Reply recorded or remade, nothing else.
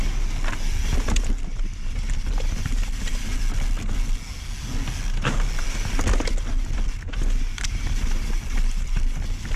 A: recorded